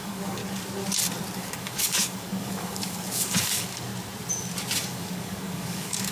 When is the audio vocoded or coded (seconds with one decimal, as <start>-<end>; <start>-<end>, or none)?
0.0-0.4; 1.4-3.9; 4.9-6.1